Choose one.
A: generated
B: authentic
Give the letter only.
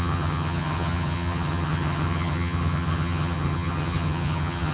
A